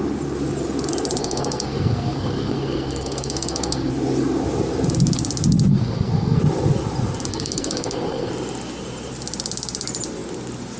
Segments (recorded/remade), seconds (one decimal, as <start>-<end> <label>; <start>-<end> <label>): 0.0-1.2 recorded; 1.2-3.9 remade; 3.9-5.7 recorded; 5.7-6.4 remade; 6.4-7.3 recorded; 7.3-8.3 remade; 8.3-10.8 recorded